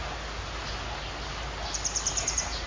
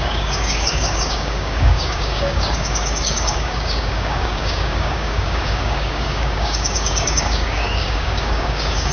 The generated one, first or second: second